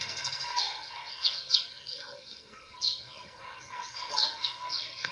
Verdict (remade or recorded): remade